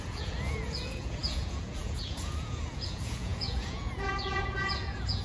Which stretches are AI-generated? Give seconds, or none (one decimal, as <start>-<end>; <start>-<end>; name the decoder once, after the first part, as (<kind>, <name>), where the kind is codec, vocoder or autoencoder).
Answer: 0.0-5.2 (vocoder, Vocos)